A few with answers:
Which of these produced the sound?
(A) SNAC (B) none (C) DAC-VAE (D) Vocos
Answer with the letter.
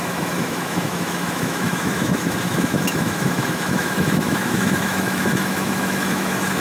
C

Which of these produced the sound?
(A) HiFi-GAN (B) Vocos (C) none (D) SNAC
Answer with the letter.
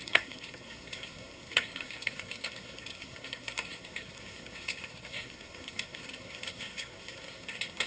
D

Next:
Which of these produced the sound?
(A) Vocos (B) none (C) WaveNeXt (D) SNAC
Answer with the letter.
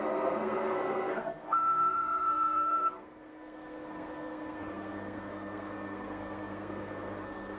D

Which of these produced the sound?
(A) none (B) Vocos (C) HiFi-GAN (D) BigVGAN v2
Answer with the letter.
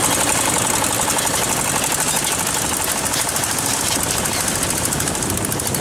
A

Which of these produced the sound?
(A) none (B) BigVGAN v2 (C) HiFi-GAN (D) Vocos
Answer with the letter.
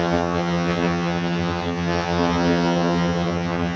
C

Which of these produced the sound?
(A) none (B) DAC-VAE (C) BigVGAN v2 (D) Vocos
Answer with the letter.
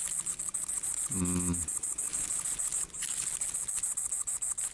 A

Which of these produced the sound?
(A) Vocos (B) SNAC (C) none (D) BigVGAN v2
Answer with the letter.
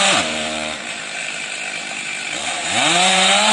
D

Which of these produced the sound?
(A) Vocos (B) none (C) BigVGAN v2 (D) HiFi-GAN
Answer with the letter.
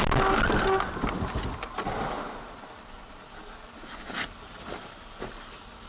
B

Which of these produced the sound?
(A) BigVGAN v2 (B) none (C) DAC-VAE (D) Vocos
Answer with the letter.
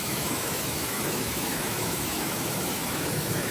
C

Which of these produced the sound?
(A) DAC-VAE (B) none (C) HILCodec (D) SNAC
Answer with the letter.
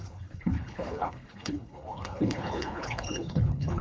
C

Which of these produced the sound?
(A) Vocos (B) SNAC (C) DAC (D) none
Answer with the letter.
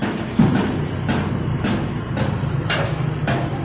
D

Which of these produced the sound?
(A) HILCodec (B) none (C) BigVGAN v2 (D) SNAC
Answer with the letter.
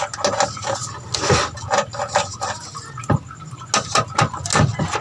B